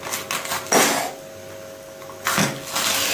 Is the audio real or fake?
real